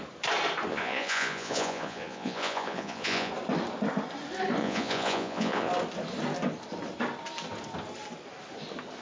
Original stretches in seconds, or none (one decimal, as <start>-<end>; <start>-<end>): 0.0-0.7; 3.3-4.6; 5.7-9.0